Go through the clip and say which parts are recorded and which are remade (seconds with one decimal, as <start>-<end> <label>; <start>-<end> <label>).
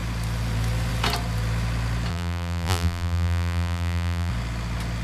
0.0-2.1 recorded; 2.1-4.3 remade; 4.3-5.0 recorded